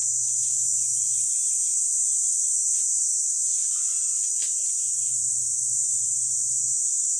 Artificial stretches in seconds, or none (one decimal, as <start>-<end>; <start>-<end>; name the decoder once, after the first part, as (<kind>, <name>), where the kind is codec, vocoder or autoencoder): none

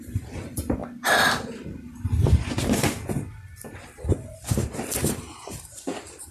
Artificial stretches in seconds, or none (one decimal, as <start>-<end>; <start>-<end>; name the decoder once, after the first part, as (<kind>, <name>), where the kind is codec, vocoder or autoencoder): 0.0-0.8 (vocoder, BigVGAN v2); 4.1-6.3

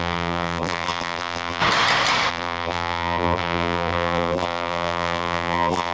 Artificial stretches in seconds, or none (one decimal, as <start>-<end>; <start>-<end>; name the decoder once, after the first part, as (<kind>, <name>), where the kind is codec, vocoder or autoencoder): 0.0-1.6 (vocoder, BigVGAN v2); 2.3-5.9